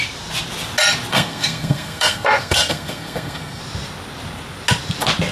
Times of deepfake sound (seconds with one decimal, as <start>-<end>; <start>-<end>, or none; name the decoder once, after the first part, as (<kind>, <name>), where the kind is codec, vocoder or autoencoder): 1.1-3.6 (codec, SNAC)